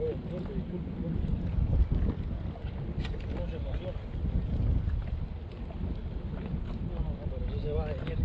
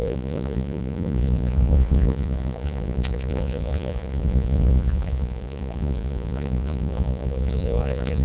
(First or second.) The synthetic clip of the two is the second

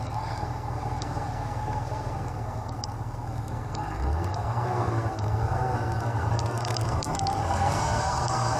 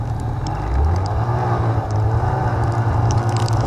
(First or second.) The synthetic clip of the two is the first